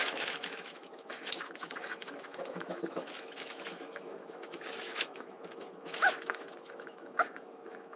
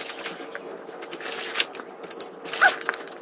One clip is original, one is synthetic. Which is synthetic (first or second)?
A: first